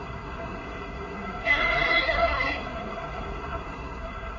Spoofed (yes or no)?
yes